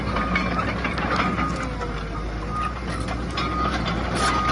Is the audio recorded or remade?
recorded